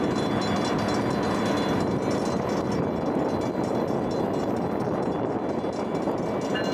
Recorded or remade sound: recorded